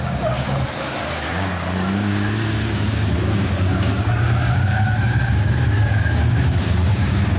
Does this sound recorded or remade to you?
remade